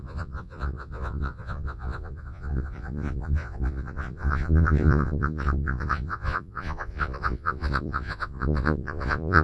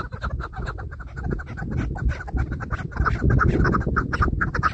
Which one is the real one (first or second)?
second